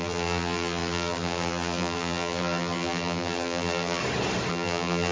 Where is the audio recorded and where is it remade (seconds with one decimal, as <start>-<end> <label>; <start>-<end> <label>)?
0.0-4.0 remade; 4.0-4.5 recorded; 4.5-5.1 remade